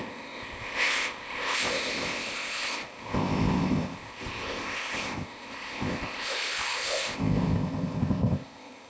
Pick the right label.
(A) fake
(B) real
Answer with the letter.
A